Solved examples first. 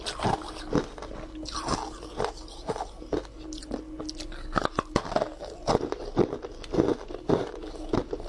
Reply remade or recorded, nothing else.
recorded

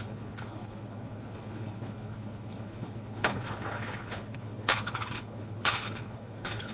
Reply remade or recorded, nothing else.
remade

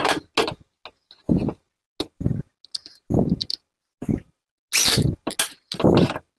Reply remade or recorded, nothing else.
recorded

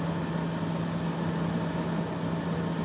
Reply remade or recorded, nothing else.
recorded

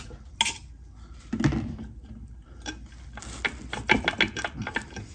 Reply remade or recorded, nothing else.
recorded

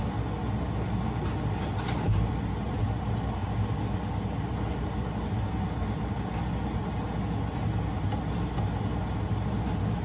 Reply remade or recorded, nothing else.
recorded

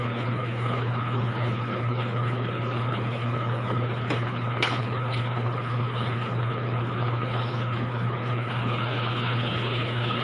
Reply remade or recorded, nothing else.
remade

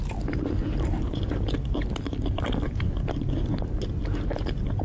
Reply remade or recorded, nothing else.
recorded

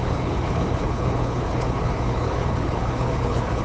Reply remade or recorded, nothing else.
remade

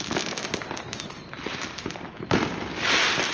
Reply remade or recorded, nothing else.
recorded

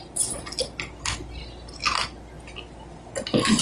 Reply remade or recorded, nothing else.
recorded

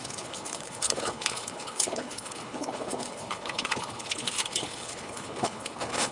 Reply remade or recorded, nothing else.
remade